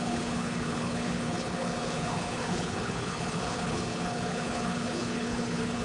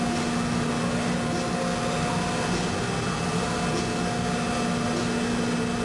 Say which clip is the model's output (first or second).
first